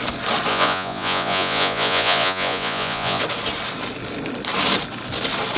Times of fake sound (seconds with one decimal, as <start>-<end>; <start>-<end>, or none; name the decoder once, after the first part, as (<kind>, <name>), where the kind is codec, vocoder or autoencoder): 0.5-3.2 (vocoder, Vocos)